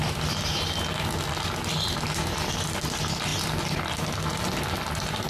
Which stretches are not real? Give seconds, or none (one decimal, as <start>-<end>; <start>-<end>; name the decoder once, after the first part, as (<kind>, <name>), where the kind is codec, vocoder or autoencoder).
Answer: none